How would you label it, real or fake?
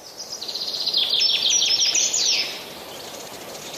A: real